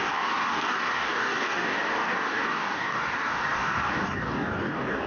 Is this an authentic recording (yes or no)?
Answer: no